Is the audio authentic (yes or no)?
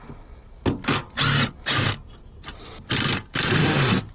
yes